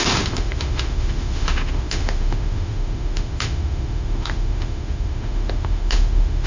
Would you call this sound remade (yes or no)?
yes